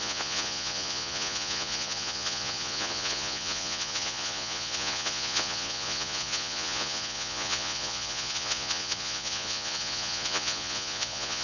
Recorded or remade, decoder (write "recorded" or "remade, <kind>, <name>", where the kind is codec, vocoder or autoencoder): remade, vocoder, Vocos